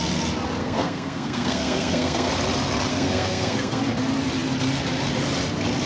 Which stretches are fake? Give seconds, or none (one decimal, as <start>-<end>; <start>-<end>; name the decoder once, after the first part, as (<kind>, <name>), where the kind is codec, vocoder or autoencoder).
0.6-2.3 (codec, SNAC); 2.9-3.8